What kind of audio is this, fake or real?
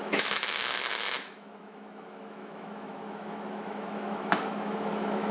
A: fake